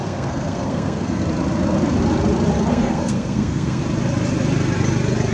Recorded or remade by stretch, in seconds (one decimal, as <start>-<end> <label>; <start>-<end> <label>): 0.0-1.2 remade; 1.2-2.7 recorded; 2.7-3.8 remade; 3.8-5.3 recorded